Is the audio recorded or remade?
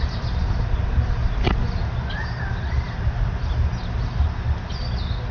recorded